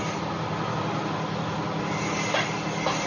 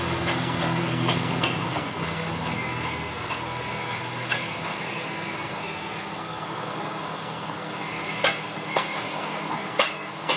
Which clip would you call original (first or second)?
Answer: first